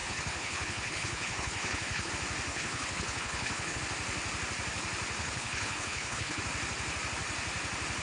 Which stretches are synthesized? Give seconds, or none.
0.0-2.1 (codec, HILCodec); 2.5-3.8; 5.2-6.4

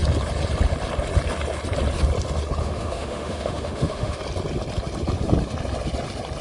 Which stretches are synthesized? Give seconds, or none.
2.6-4.2 (autoencoder, DAC-VAE)

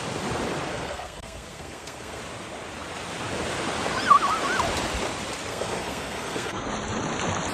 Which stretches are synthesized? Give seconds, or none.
0.7-2.2 (codec, SNAC); 5.5-6.7